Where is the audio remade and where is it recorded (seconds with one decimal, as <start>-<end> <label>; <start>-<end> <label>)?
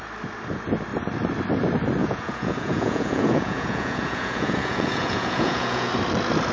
0.0-2.0 recorded; 2.0-5.9 remade; 5.9-6.5 recorded